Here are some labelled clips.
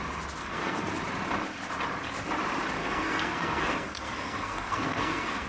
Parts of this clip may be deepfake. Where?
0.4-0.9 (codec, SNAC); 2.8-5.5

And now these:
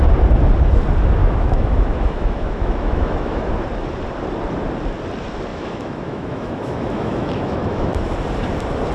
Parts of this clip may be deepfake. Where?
1.2-3.5 (autoencoder, DAC-VAE); 5.5-8.1

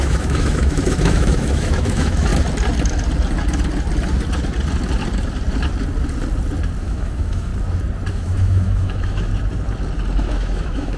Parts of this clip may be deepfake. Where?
0.0-2.3 (autoencoder, DAC-VAE); 6.8-7.5; 8.1-9.3; 10.2-11.0

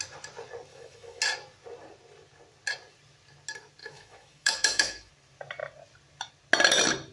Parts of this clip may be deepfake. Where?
0.7-1.2 (autoencoder, DAC-VAE); 3.8-5.1

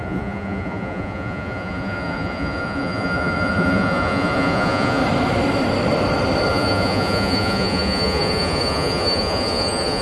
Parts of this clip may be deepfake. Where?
0.0-5.0 (vocoder, Vocos); 6.5-10.0

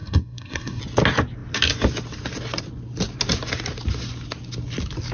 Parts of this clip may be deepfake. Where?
0.0-0.8 (codec, SNAC)

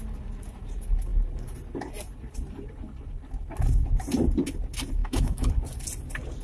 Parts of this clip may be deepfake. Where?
5.0-5.5 (autoencoder, DAC-VAE)

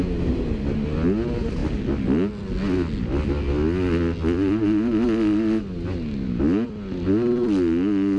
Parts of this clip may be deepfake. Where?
none